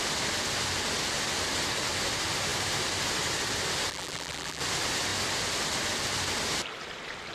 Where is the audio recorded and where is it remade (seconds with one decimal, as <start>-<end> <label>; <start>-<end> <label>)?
0.0-3.9 recorded; 3.9-4.6 remade; 4.6-7.3 recorded